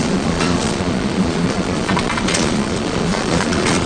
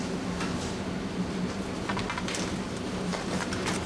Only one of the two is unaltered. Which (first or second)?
second